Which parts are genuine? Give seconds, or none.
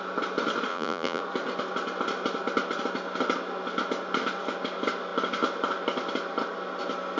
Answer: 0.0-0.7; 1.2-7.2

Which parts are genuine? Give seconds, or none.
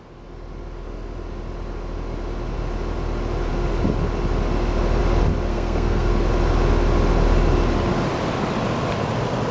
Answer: 0.0-5.5; 6.1-9.5